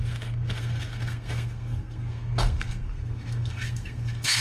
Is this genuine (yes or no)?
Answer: no